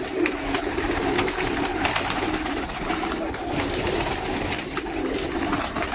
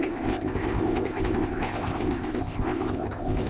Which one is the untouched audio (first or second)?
first